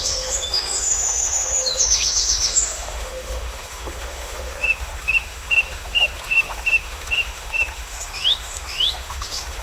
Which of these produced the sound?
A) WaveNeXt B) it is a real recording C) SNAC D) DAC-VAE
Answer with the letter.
D